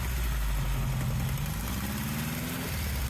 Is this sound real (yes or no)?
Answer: yes